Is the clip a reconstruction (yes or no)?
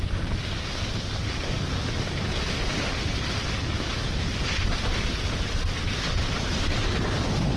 no